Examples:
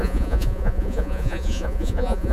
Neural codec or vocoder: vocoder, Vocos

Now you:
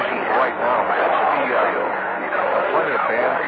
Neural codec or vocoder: none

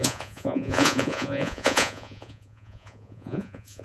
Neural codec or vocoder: vocoder, Vocos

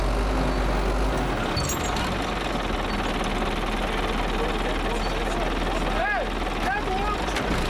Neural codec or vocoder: none